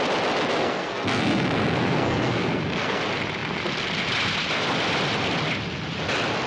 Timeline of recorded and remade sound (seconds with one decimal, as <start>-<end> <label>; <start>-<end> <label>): 0.0-0.5 recorded; 0.5-3.0 remade; 3.0-6.5 recorded